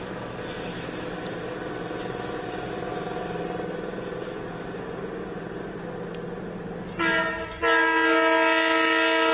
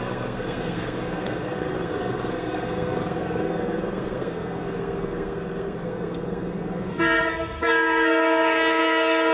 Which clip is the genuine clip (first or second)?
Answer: first